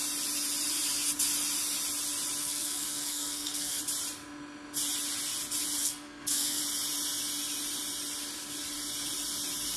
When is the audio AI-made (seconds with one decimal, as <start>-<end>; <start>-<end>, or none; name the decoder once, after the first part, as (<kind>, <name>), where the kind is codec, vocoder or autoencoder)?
2.4-3.8 (codec, SNAC); 5.8-6.6

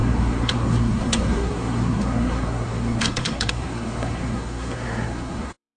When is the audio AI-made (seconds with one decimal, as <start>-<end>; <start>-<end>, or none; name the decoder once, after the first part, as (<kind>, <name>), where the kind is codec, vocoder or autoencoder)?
0.0-5.8 (codec, SNAC)

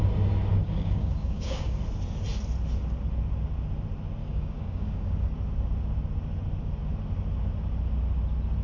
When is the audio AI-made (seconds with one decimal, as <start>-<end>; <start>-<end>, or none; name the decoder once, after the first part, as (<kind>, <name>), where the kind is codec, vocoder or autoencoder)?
0.5-1.8 (codec, DAC); 4.2-5.3

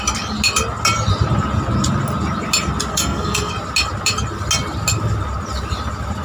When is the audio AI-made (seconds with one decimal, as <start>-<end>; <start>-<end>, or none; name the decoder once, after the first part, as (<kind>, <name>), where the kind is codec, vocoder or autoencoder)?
2.9-3.5 (codec, SNAC)

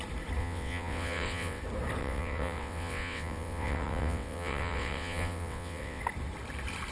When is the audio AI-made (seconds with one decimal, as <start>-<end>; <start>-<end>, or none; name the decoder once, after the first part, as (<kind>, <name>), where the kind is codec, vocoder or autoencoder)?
0.4-1.6 (vocoder, WaveNeXt); 2.0-6.0

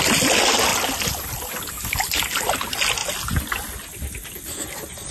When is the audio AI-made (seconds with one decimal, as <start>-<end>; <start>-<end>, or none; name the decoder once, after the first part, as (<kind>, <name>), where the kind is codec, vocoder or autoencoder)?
none

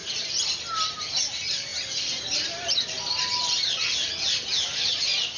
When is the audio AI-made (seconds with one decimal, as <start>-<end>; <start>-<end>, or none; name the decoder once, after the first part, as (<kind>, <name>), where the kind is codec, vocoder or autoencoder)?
none

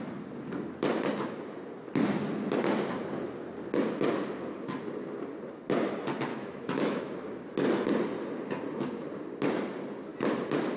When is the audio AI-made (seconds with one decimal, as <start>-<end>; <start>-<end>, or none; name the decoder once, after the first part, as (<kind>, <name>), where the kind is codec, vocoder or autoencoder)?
6.3-7.0 (autoencoder, DAC-VAE)